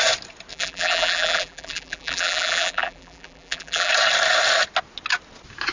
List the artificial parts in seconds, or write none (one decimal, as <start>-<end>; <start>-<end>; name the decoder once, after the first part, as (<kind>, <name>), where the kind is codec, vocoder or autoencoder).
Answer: 0.5-3.9 (vocoder, BigVGAN v2)

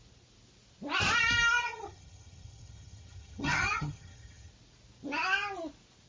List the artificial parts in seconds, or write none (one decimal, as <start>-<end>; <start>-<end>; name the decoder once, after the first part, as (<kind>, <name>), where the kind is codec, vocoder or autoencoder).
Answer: 1.6-4.5 (vocoder, HiFi-GAN)

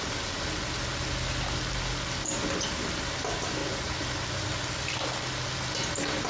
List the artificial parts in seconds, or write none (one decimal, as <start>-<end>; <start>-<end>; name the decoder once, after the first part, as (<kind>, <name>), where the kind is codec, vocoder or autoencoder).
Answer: none

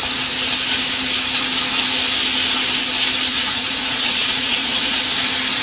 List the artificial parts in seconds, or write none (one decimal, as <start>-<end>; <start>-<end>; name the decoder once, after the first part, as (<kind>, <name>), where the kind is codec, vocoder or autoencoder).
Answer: 3.3-5.0 (vocoder, Vocos)